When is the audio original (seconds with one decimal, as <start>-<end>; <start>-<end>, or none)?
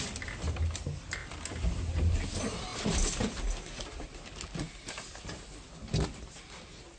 0.0-7.0